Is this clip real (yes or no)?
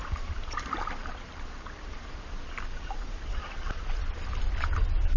no